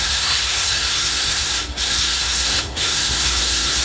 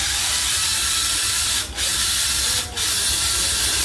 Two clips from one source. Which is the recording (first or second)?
second